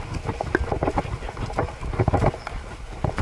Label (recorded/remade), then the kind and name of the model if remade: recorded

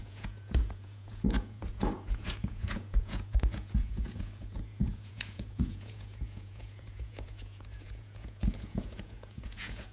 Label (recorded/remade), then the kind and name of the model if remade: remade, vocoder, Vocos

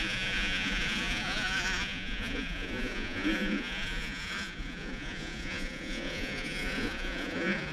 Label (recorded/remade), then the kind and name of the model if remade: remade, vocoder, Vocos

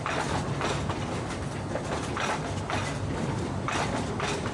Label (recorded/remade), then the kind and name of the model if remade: recorded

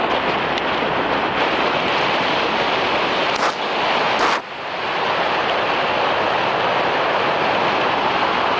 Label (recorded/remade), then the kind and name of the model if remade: recorded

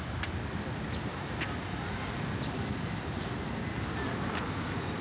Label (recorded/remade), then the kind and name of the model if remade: recorded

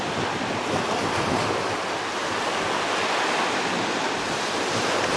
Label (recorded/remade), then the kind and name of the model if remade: recorded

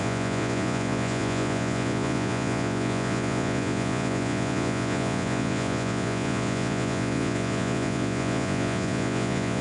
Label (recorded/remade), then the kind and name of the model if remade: remade, vocoder, Vocos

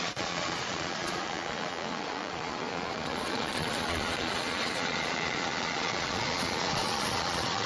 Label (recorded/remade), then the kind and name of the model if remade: remade, vocoder, Vocos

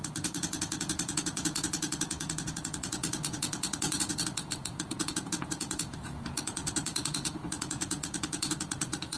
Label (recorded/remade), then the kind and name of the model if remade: remade, vocoder, Vocos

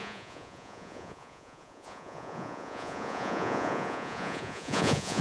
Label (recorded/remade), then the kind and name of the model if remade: remade, vocoder, Vocos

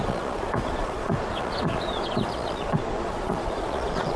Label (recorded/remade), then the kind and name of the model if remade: remade, vocoder, Vocos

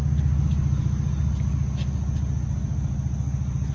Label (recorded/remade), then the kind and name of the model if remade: recorded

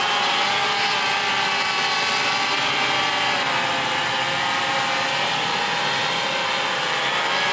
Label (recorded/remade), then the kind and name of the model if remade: recorded